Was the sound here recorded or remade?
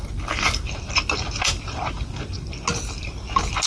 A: recorded